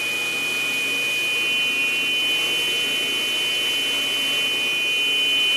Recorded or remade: recorded